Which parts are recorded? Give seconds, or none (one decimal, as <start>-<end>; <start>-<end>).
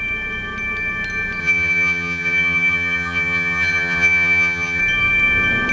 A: 0.0-1.4; 4.8-5.7